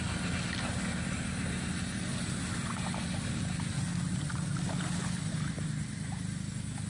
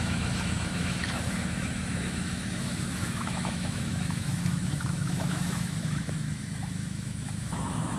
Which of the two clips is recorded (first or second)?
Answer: first